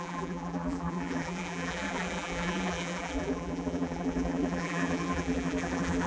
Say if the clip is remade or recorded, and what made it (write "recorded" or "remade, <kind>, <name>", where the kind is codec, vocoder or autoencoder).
remade, vocoder, BigVGAN v2